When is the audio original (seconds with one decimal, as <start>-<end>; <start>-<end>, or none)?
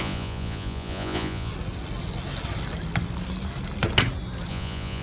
1.5-4.5